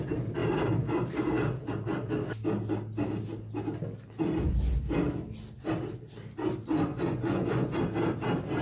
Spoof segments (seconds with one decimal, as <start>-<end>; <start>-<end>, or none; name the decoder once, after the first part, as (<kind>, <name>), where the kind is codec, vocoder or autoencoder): 6.9-7.8 (vocoder, Vocos)